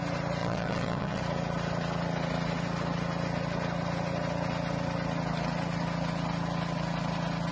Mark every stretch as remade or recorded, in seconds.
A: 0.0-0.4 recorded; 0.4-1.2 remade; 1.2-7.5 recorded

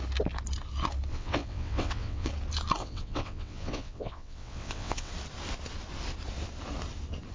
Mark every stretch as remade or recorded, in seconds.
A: 0.0-1.1 recorded; 1.1-2.3 remade; 2.3-2.8 recorded; 2.8-5.1 remade; 5.1-7.3 recorded

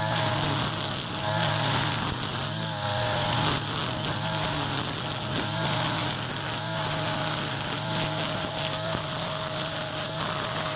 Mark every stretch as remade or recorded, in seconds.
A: 0.0-10.8 recorded